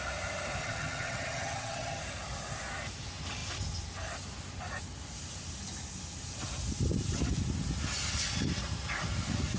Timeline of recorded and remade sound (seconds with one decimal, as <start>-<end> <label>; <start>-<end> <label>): 0.0-0.6 recorded; 0.6-2.0 remade; 2.0-9.6 recorded